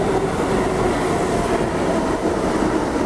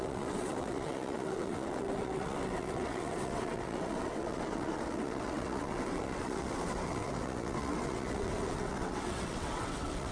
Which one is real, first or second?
first